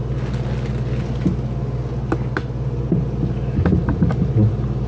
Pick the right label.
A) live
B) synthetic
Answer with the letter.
A